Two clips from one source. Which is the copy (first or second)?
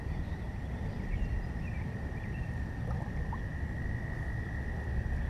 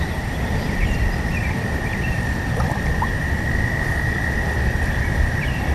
second